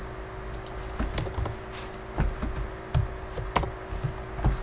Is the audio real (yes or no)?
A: yes